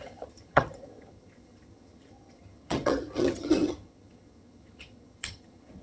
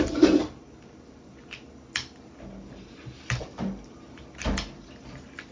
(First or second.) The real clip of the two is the second